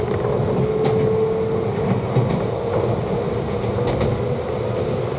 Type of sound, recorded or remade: recorded